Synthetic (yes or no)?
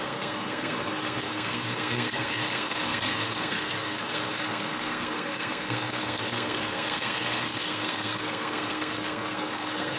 yes